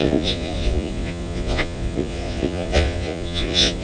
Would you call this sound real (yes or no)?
no